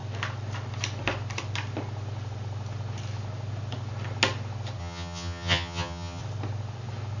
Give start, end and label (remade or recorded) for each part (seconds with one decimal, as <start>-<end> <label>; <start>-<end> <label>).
0.0-4.8 recorded; 4.8-6.2 remade; 6.2-7.2 recorded